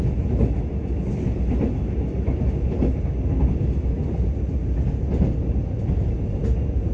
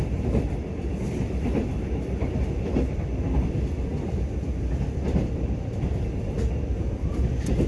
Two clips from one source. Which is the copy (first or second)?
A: second